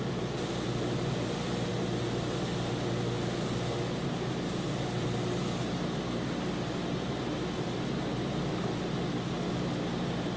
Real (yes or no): yes